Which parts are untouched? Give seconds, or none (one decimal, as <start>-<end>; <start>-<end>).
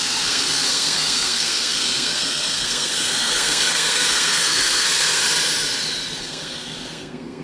5.2-6.2